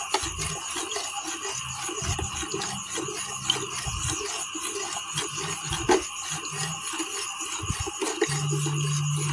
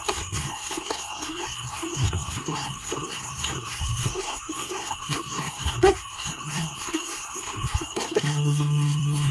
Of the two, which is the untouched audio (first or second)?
first